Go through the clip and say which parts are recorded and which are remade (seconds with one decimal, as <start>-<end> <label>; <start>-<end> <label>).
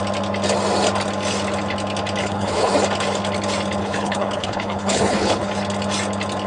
0.0-2.2 recorded; 2.2-2.7 remade; 2.7-3.8 recorded; 3.8-5.5 remade; 5.5-6.5 recorded